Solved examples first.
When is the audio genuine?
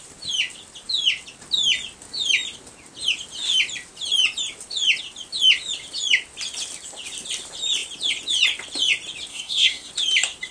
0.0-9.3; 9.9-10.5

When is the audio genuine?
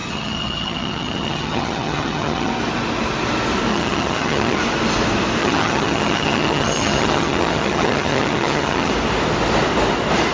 2.5-3.7; 4.6-5.4; 8.9-10.3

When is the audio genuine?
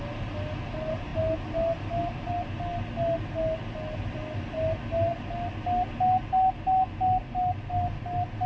0.0-8.5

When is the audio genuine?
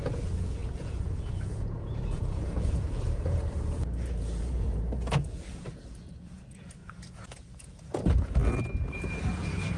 8.4-8.9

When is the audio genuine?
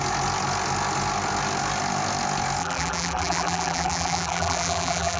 0.0-2.6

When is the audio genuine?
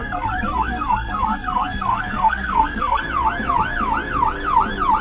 3.0-5.0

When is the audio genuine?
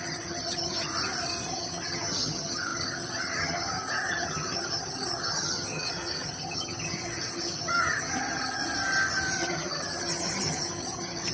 0.9-1.5; 8.6-9.4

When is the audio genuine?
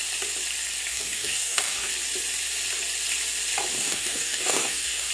0.0-0.9; 1.9-3.8